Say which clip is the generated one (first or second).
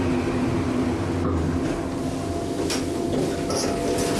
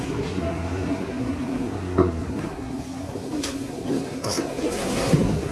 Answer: second